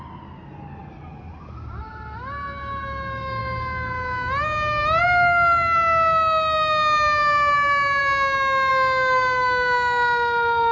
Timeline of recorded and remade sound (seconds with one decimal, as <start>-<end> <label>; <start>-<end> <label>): 0.0-10.7 recorded